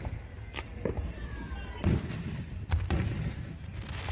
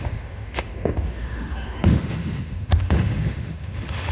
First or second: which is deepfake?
second